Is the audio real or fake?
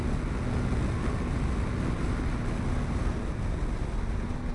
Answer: real